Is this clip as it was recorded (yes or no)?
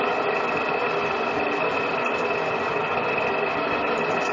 yes